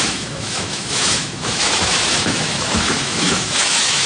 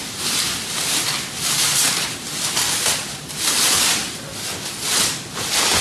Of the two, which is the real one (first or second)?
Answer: second